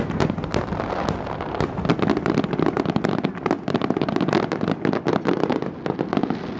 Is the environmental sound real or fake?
real